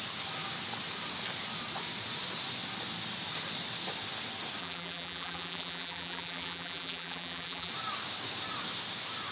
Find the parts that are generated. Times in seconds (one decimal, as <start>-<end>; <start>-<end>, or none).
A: 4.6-7.7